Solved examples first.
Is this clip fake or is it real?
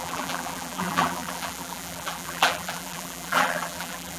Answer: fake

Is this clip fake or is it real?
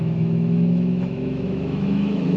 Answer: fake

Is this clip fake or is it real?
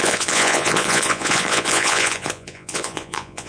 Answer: fake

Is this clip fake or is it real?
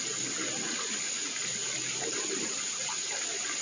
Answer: real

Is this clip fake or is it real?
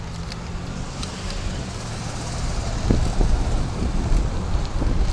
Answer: real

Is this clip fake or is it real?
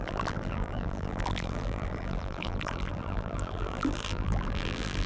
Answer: fake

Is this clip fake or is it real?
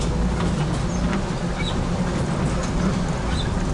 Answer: real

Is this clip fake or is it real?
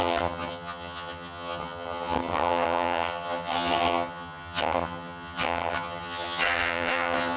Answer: fake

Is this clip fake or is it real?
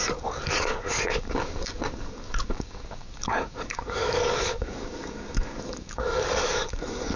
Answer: fake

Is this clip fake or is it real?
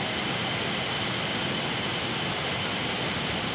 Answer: real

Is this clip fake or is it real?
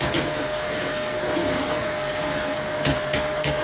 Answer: fake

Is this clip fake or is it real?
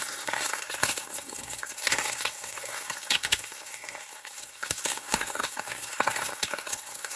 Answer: fake